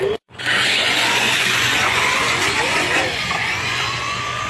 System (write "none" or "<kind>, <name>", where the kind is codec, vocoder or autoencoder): vocoder, Vocos